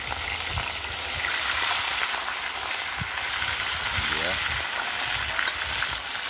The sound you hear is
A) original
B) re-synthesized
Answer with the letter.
A